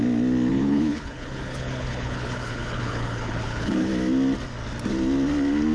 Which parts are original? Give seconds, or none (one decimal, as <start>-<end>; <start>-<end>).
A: 0.0-0.5; 3.9-5.7